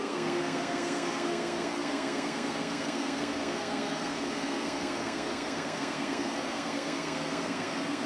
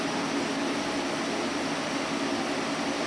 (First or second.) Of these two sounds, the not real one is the first